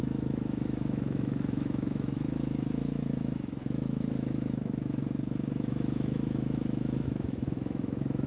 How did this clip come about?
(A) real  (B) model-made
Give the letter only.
B